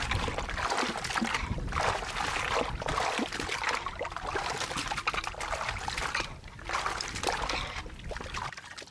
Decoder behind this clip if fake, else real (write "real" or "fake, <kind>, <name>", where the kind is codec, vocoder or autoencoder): real